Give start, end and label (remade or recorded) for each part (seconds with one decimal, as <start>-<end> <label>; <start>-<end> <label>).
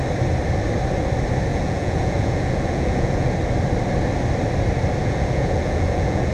0.0-1.5 recorded; 1.5-3.3 remade; 3.3-5.0 recorded; 5.0-6.3 remade